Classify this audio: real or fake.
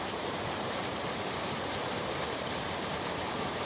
fake